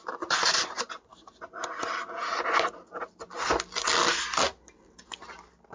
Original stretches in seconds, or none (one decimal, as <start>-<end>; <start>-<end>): 0.0-5.7